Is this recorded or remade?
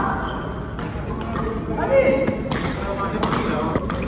recorded